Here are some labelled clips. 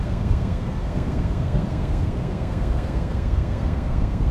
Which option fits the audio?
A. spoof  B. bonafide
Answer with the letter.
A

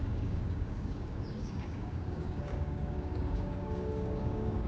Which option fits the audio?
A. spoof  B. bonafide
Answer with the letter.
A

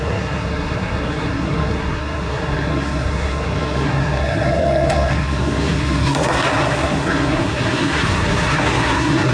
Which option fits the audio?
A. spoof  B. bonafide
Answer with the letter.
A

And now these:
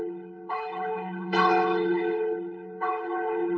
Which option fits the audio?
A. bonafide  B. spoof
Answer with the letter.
B